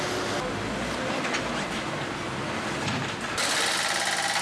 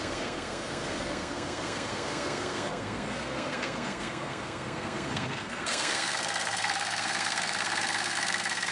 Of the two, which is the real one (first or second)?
first